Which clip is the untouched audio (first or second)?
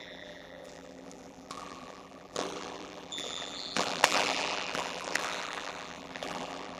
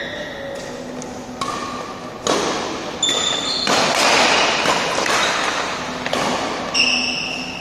second